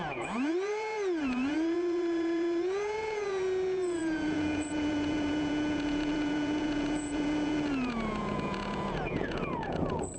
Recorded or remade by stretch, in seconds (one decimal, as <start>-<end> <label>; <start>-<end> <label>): 0.0-10.2 remade